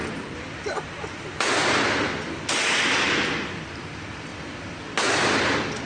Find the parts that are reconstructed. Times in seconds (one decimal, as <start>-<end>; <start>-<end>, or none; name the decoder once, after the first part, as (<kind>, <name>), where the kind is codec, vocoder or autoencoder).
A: none